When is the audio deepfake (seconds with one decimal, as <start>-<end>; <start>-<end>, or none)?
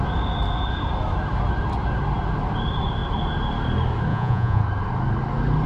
4.1-4.6